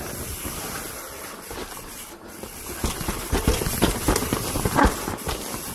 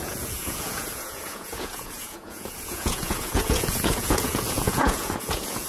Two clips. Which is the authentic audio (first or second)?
first